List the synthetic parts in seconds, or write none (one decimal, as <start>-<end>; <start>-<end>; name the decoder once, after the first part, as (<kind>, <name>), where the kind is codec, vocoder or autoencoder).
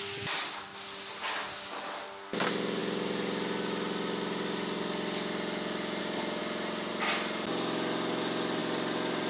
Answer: 6.4-6.9 (vocoder, BigVGAN v2); 8.6-9.3